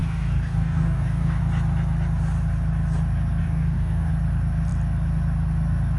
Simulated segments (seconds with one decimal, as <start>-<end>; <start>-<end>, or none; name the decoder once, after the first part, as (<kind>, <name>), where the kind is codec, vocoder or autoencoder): 0.0-1.4 (codec, DAC); 3.4-4.1